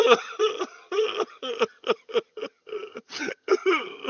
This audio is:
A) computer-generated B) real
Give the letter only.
A